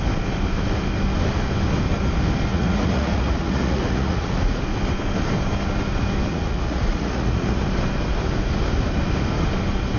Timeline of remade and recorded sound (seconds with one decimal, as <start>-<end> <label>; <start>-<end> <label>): 0.0-2.5 recorded; 2.5-4.6 remade; 4.6-6.3 recorded; 6.3-7.6 remade; 7.6-10.0 recorded